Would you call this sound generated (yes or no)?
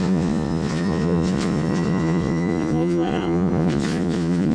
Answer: yes